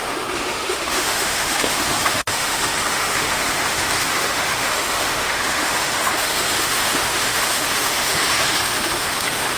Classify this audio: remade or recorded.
remade